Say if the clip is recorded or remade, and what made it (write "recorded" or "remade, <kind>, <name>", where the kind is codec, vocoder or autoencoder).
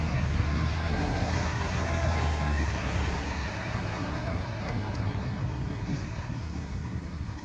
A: remade, codec, SNAC